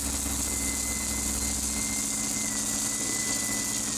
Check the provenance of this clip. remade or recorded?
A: recorded